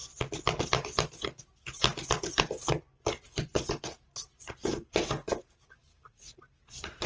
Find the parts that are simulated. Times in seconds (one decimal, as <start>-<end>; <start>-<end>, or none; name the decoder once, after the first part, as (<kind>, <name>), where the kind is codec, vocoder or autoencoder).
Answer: 3.7-7.1 (vocoder, BigVGAN v2)

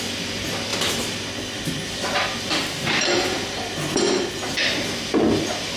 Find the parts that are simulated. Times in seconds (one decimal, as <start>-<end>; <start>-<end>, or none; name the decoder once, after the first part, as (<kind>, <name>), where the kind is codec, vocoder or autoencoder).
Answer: none

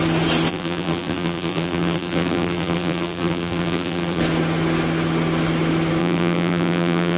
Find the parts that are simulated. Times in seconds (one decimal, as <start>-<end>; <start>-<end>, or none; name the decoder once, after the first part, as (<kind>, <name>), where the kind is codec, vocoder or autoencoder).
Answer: 0.5-4.2 (vocoder, BigVGAN v2); 6.0-7.2

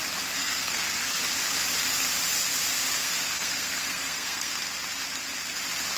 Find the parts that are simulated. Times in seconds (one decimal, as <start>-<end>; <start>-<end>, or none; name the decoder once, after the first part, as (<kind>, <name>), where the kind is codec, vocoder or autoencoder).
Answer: 0.4-1.2 (codec, SNAC); 3.0-4.5

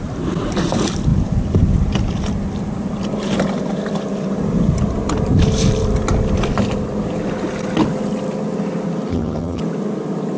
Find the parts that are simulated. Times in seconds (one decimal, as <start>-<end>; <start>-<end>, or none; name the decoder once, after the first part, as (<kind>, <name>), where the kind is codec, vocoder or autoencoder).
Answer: 9.1-9.6 (vocoder, HiFi-GAN)